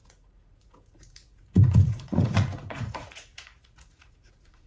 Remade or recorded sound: remade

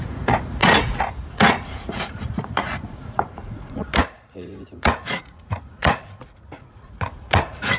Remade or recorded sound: remade